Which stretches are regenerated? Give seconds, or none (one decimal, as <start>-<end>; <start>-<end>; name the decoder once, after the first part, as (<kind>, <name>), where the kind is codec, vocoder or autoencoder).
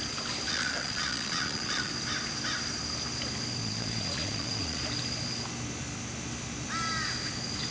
0.5-1.9 (vocoder, Vocos); 3.6-4.8